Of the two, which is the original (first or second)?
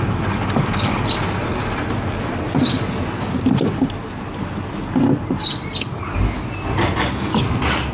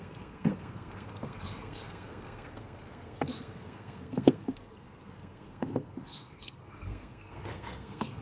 first